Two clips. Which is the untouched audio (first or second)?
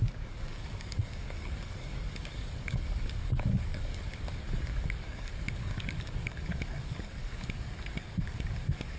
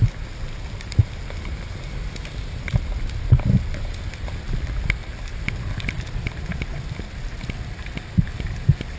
second